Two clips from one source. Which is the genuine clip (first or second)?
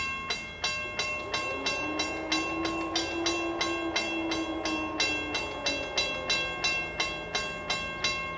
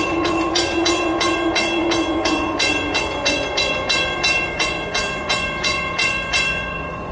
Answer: first